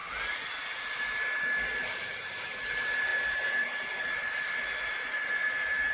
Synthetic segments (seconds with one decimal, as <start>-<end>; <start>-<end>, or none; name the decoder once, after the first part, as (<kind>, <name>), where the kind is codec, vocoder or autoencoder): none